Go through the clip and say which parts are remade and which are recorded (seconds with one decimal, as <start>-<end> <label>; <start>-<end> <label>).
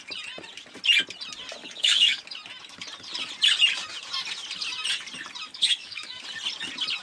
0.0-1.6 recorded; 1.6-2.2 remade; 2.2-5.5 recorded; 5.5-6.2 remade; 6.2-7.0 recorded